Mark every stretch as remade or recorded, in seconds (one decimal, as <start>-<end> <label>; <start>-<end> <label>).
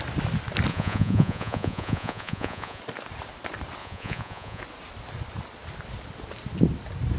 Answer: 0.0-0.7 recorded; 0.7-2.8 remade; 2.8-3.8 recorded; 3.8-4.6 remade; 4.6-7.2 recorded